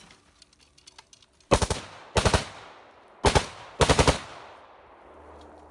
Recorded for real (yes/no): yes